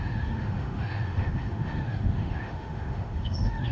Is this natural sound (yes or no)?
no